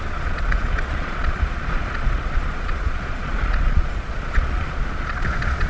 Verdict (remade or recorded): remade